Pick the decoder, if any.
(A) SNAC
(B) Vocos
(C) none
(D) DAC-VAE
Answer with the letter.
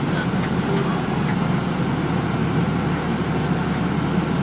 C